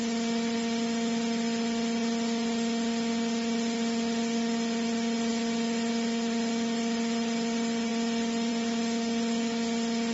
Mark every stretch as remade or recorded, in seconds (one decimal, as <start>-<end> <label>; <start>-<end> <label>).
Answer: 0.0-10.1 recorded